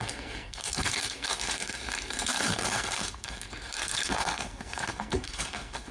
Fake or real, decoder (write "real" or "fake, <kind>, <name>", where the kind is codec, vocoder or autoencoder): fake, codec, SNAC